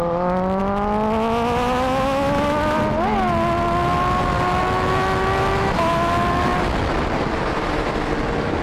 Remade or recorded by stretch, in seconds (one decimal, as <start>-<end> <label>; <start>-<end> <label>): 0.0-8.6 recorded

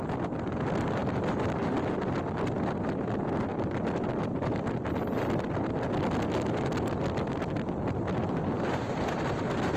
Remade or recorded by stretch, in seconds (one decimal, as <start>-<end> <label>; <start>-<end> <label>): 0.0-1.0 recorded; 1.0-1.9 remade; 1.9-9.8 recorded

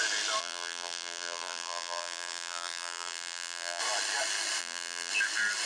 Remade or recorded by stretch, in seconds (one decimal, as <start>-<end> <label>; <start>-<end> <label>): 0.0-0.4 recorded; 0.4-3.8 remade; 3.8-4.6 recorded; 4.6-5.1 remade; 5.1-5.7 recorded

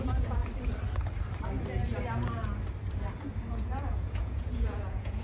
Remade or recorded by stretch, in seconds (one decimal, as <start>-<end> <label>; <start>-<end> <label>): 0.0-0.4 remade; 0.4-3.5 recorded; 3.5-5.2 remade

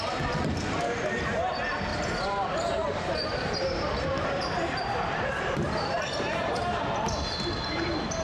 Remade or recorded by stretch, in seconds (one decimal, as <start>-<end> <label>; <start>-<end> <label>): 0.0-1.9 recorded; 1.9-6.8 remade; 6.8-8.2 recorded

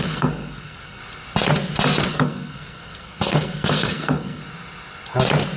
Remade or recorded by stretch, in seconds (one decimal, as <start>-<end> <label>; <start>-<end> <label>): 0.0-1.0 remade; 1.0-2.1 recorded; 2.1-4.4 remade; 4.4-5.6 recorded